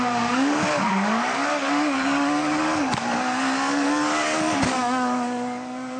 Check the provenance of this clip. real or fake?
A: fake